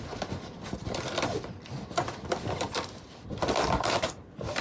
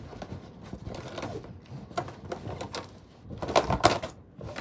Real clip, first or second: second